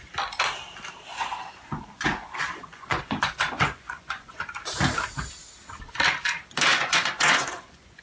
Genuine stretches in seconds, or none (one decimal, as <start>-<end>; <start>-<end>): 0.0-1.1; 4.4-6.7